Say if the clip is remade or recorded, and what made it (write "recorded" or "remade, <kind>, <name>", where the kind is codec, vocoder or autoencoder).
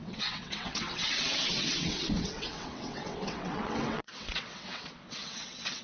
remade, vocoder, WaveNeXt